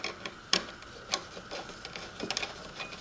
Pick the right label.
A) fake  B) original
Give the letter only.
B